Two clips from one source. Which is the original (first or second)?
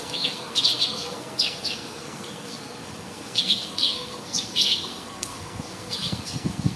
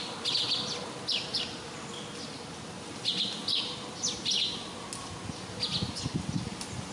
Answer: second